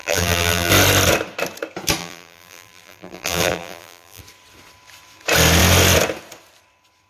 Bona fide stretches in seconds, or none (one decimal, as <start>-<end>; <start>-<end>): 0.7-2.0; 4.2-7.1